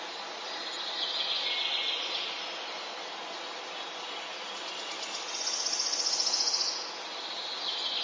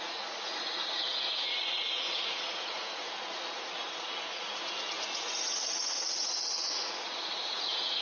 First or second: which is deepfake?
second